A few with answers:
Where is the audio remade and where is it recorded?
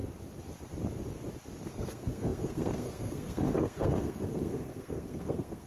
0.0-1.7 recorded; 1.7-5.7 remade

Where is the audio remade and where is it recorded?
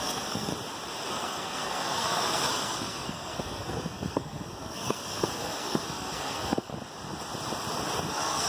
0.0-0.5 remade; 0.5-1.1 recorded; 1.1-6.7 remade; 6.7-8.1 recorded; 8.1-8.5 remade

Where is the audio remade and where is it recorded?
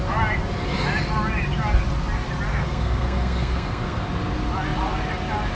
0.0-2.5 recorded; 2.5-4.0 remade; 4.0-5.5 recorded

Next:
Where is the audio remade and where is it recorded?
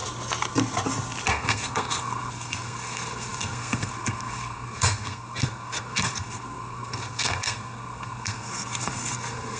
0.0-1.3 recorded; 1.3-9.6 remade